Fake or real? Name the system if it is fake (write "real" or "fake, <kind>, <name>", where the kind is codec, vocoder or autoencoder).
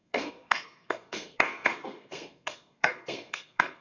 fake, codec, SNAC